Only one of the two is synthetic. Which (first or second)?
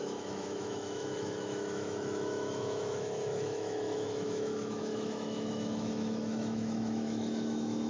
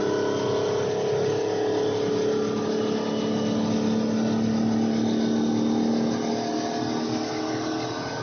first